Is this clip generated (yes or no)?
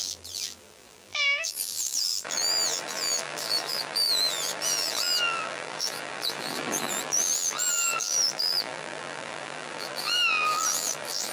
yes